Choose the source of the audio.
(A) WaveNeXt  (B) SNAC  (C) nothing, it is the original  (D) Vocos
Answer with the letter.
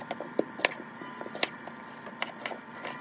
C